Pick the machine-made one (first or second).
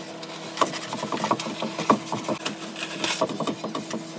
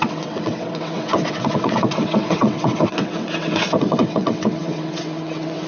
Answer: second